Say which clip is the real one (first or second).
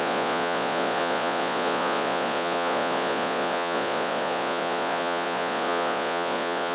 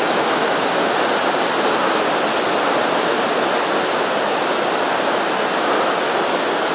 second